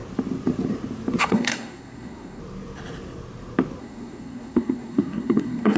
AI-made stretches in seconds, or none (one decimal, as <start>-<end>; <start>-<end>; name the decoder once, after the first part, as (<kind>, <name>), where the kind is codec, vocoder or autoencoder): 1.2-2.4 (codec, SNAC); 3.8-5.8